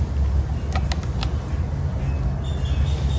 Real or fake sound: real